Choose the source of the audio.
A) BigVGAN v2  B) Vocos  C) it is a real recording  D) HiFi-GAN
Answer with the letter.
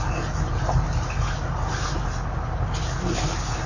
C